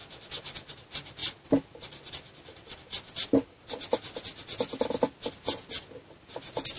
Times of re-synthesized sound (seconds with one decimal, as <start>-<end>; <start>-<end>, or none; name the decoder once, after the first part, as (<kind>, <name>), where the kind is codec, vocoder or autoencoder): none